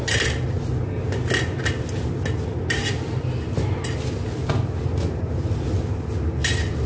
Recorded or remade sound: recorded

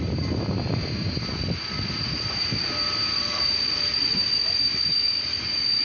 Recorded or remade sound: remade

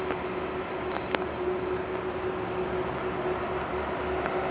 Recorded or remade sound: recorded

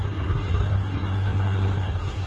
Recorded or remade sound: remade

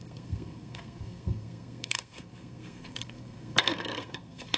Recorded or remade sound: remade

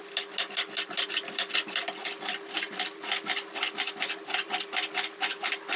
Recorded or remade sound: recorded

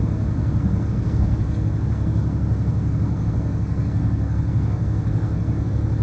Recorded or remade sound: remade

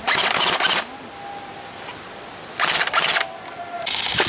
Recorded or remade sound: recorded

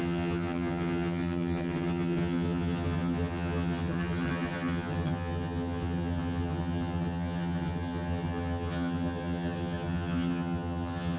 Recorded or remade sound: remade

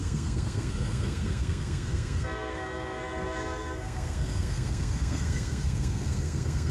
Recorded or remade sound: remade